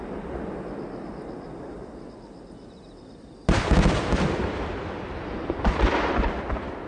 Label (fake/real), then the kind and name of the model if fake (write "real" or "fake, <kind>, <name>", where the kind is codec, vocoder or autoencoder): real